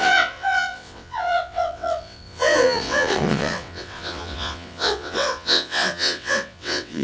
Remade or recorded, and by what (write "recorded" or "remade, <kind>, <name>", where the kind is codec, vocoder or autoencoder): remade, vocoder, WaveNeXt